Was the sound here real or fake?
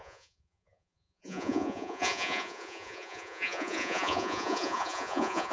fake